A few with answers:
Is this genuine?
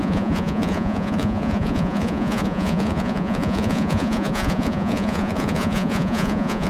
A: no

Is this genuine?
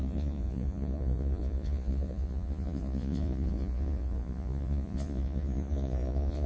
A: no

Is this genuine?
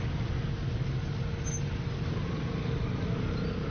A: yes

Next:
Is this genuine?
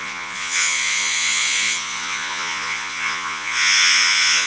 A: no